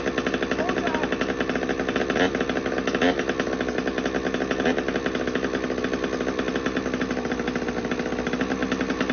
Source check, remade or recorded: recorded